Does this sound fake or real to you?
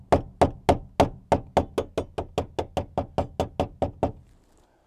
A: real